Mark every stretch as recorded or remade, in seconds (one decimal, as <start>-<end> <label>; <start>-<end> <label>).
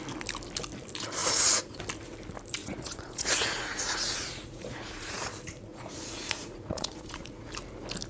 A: 0.0-1.2 recorded; 1.2-1.8 remade; 1.8-2.6 recorded; 2.6-5.2 remade; 5.2-5.7 recorded; 5.7-7.5 remade; 7.5-8.1 recorded